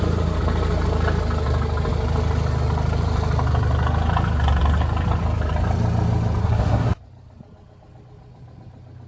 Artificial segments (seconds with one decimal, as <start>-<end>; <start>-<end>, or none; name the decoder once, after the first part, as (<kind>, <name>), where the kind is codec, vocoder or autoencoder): 6.4-6.9 (codec, SNAC)